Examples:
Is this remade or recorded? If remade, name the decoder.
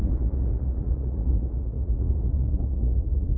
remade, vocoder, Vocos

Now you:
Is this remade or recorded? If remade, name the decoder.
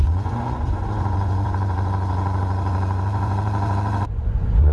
remade, vocoder, Vocos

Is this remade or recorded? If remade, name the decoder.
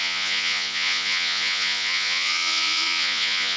remade, vocoder, Vocos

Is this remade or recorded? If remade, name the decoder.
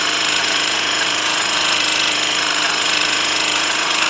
remade, vocoder, Vocos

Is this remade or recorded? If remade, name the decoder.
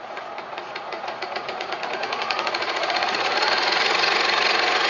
remade, vocoder, Vocos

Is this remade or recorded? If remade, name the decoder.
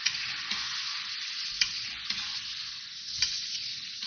remade, vocoder, Vocos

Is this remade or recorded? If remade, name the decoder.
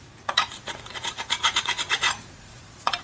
remade, vocoder, Vocos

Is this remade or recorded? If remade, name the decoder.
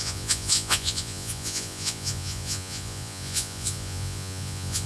remade, vocoder, Vocos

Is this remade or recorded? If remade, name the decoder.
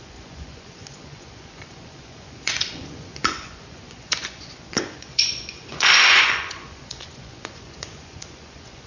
remade, vocoder, Vocos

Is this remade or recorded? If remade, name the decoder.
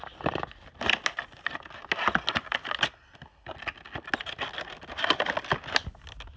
recorded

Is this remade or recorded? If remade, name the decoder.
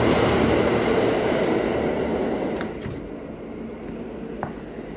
recorded